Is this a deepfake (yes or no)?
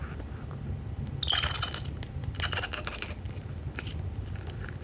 no